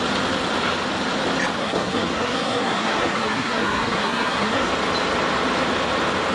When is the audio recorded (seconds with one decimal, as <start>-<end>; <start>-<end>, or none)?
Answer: 0.0-1.6; 4.7-6.3